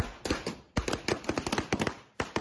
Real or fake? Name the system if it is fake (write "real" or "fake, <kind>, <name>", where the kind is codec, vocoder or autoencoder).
real